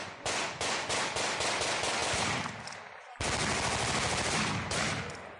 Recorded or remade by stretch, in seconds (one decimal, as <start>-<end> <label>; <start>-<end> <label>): 0.0-0.9 remade; 0.9-5.4 recorded